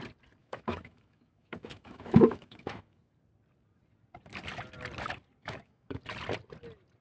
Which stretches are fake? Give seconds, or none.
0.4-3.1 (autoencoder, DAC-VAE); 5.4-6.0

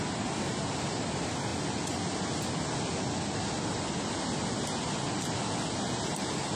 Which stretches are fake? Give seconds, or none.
none

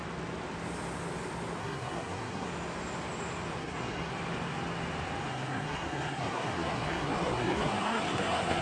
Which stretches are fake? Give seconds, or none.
1.6-2.5 (codec, SNAC); 3.6-4.1; 5.3-8.6

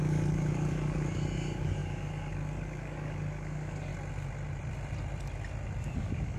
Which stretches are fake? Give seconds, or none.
0.0-3.9 (codec, DAC); 5.8-6.4

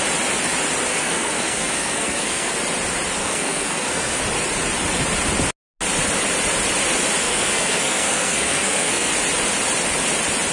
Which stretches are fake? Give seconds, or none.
0.9-2.5 (codec, SNAC); 3.2-4.2; 7.2-9.1

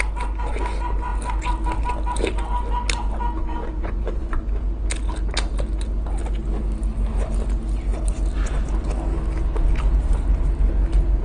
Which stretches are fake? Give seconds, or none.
3.4-4.4 (vocoder, Vocos)

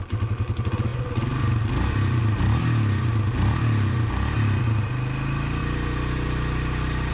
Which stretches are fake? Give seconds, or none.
5.6-7.1 (vocoder, BigVGAN v2)

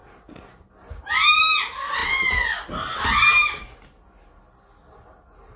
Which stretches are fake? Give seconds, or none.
none